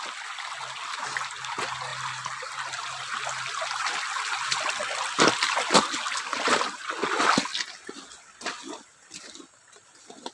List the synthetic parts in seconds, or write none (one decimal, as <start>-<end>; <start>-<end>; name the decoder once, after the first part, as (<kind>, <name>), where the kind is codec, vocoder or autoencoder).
1.9-6.2 (vocoder, BigVGAN v2)